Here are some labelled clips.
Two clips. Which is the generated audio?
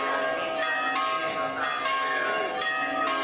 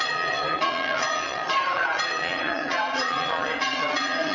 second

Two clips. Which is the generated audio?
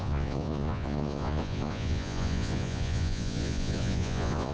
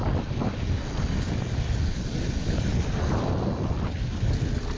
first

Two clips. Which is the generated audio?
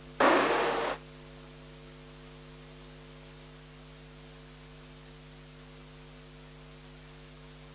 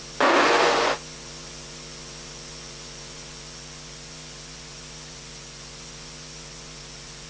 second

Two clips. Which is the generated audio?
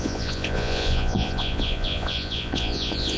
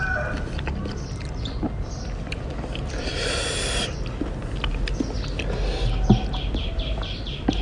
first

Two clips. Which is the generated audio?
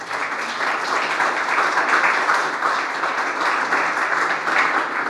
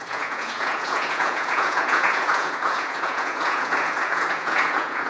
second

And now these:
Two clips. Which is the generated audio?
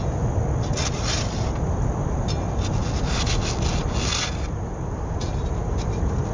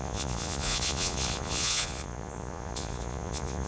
second